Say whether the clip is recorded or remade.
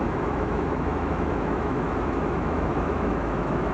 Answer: remade